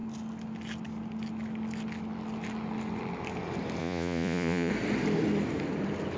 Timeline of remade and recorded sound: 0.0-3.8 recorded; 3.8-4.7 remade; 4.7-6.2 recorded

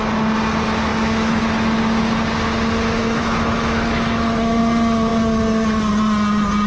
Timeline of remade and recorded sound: 0.0-0.9 recorded; 0.9-1.4 remade; 1.4-3.0 recorded; 3.0-4.6 remade; 4.6-6.7 recorded

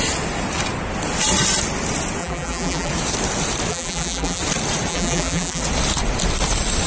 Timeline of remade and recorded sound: 0.0-2.2 recorded; 2.2-2.9 remade; 2.9-3.7 recorded; 3.7-4.4 remade; 4.4-4.9 recorded; 4.9-5.6 remade; 5.6-6.9 recorded

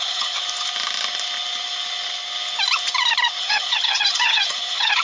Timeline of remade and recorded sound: 0.0-0.4 remade; 0.4-3.4 recorded; 3.4-5.0 remade

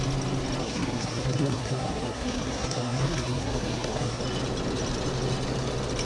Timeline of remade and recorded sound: 0.0-0.6 recorded; 0.6-4.2 remade; 4.2-6.0 recorded

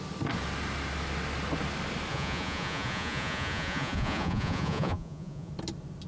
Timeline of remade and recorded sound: 0.0-2.1 recorded; 2.1-5.5 remade; 5.5-6.1 recorded

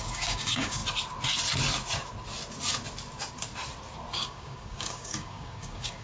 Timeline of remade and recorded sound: 0.0-0.8 remade; 0.8-4.1 recorded; 4.1-6.0 remade